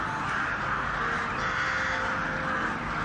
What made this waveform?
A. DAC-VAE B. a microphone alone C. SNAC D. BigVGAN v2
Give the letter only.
B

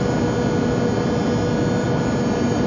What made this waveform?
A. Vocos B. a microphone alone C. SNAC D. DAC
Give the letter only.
B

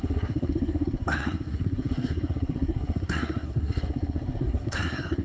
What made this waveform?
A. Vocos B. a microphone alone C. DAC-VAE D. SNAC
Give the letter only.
D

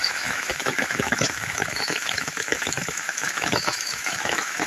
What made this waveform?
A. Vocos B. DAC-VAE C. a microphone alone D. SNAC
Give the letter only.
B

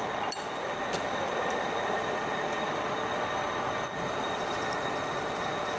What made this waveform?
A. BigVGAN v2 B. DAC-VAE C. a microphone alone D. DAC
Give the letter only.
C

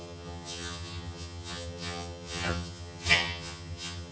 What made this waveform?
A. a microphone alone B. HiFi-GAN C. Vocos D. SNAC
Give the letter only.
B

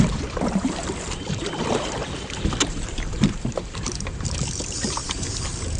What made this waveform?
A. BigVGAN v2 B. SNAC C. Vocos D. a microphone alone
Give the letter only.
A